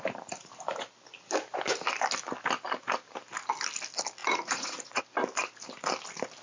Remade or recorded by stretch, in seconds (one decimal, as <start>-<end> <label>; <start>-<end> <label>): 0.0-4.2 recorded; 4.2-5.0 remade; 5.0-6.4 recorded